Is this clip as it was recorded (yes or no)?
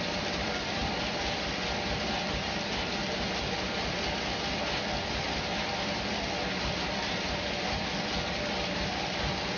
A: yes